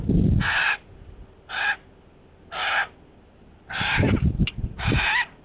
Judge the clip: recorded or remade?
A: recorded